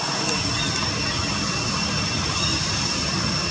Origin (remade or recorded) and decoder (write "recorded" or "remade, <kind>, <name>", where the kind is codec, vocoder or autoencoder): recorded